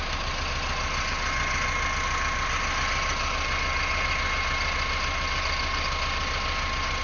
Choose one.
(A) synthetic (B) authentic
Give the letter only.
B